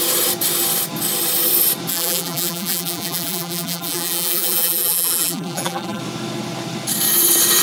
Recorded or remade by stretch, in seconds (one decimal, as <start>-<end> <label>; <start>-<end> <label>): 0.0-1.9 recorded; 1.9-6.0 remade; 6.0-7.6 recorded